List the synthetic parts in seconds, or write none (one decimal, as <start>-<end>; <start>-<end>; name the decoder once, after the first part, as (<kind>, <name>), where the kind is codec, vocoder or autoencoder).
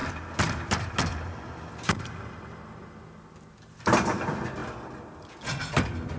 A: none